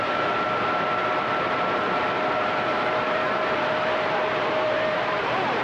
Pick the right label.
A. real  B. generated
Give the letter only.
B